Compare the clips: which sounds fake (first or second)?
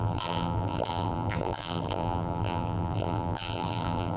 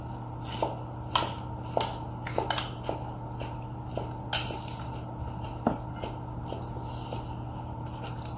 first